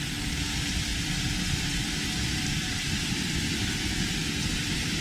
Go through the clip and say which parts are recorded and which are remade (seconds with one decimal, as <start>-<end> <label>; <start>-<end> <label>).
0.0-0.9 recorded; 0.9-3.1 remade; 3.1-4.2 recorded; 4.2-5.0 remade